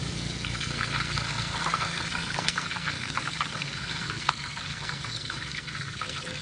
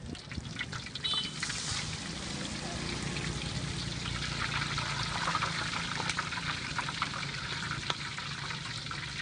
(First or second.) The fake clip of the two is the first